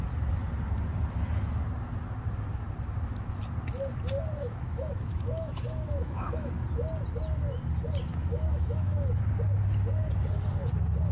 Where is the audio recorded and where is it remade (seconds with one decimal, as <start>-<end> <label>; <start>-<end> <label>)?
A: 0.0-4.4 recorded; 4.4-6.5 remade; 6.5-8.1 recorded; 8.1-9.2 remade; 9.2-11.1 recorded